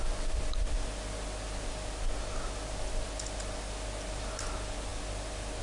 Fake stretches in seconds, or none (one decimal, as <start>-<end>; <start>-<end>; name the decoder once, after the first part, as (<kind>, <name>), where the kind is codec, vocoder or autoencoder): none